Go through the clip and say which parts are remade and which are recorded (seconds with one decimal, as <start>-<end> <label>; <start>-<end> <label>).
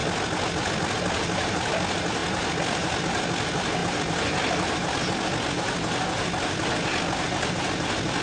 0.0-8.2 recorded